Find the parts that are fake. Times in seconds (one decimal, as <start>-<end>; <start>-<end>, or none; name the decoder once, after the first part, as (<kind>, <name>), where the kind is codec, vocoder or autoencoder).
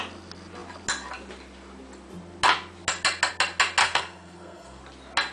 3.8-4.8 (codec, SNAC)